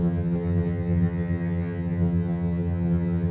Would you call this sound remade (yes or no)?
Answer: yes